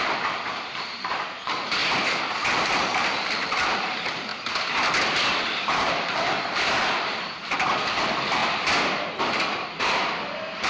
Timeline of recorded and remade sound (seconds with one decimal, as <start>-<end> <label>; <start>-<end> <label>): 0.0-1.8 remade; 1.8-2.4 recorded; 2.4-4.3 remade; 4.3-5.7 recorded; 5.7-8.4 remade; 8.4-9.2 recorded; 9.2-10.7 remade